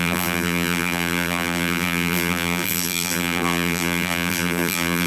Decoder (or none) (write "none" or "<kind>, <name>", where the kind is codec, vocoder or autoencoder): vocoder, BigVGAN v2